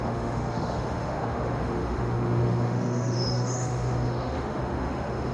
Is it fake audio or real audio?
fake